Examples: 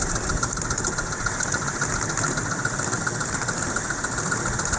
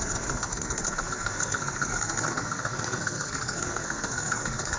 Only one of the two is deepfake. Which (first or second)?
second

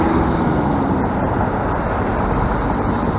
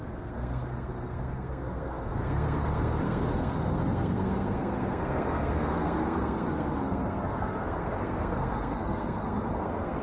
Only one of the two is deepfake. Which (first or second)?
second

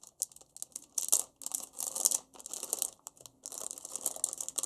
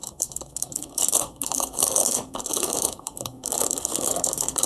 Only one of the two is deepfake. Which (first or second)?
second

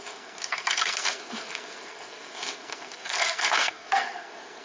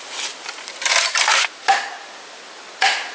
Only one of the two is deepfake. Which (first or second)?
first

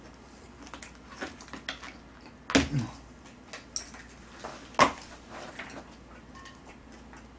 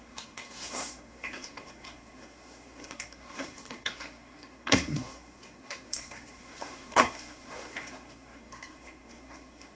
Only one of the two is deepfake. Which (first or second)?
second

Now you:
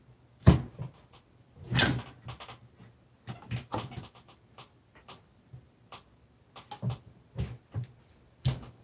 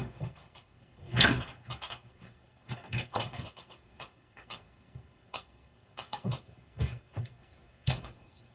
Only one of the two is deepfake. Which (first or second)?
second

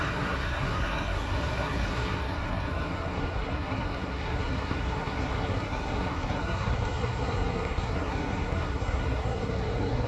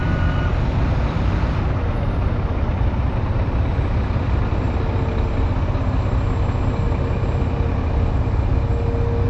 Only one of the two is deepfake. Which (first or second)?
first